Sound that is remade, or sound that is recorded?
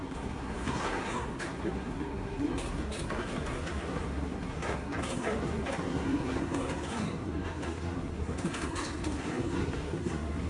remade